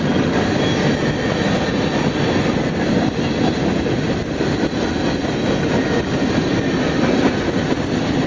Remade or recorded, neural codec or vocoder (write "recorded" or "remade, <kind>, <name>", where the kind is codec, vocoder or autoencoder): recorded